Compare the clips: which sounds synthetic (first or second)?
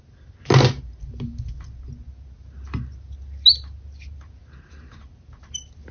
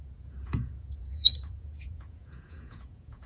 second